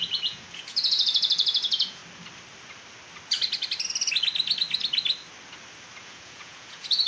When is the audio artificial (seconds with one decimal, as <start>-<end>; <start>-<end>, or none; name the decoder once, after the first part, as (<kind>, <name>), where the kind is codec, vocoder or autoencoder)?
0.0-2.0 (vocoder, Vocos); 6.0-7.1